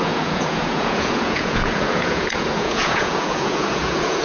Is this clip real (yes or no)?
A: no